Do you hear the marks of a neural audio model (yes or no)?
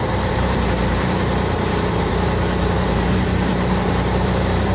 yes